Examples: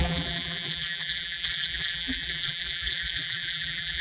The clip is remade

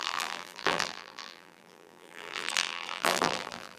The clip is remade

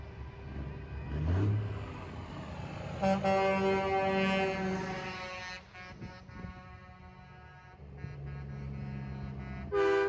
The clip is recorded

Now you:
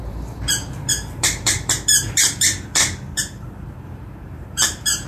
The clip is remade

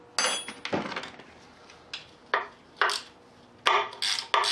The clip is recorded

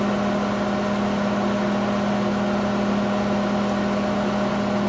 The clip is recorded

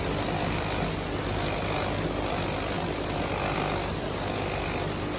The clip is recorded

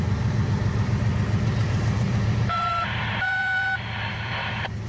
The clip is remade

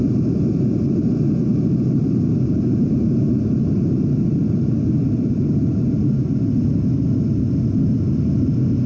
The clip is remade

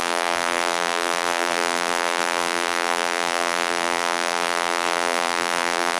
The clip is remade